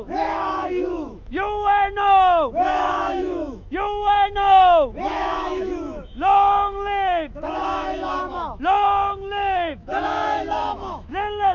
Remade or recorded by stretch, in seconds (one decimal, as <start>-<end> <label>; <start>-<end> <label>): 0.0-11.5 remade